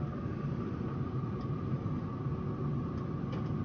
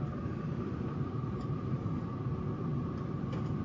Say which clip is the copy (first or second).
second